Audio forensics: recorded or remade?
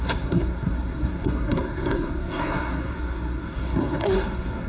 remade